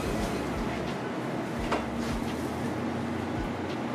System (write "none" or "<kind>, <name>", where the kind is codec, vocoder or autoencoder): none